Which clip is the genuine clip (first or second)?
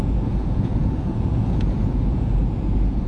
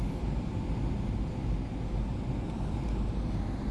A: second